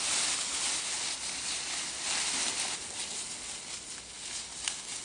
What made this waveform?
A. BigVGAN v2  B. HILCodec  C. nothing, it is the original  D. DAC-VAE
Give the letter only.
C